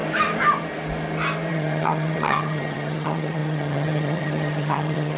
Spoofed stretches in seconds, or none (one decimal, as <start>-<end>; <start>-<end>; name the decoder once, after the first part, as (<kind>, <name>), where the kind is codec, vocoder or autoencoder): 1.5-5.2 (vocoder, HiFi-GAN)